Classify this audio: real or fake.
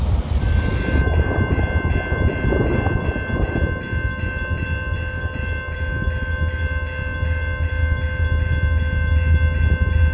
real